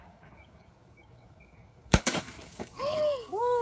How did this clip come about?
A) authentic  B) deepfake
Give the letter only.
B